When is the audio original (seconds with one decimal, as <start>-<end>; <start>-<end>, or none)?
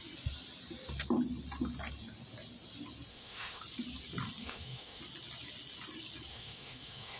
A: 0.0-3.1; 3.6-4.4; 5.0-6.3